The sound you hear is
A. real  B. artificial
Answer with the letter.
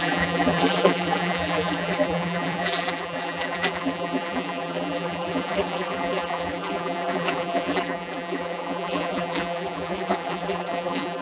B